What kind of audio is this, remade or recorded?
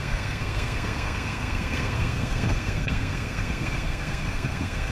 remade